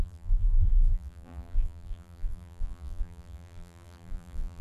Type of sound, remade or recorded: remade